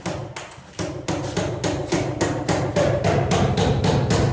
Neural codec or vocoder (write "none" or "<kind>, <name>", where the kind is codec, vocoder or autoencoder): none